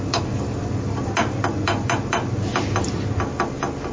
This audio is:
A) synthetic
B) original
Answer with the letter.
B